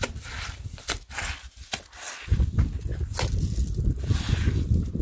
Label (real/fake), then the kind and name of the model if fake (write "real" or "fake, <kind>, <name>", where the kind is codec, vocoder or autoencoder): real